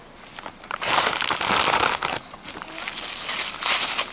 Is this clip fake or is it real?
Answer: real